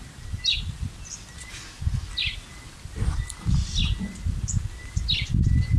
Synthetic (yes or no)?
no